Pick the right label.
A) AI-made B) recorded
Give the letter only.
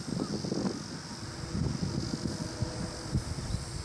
B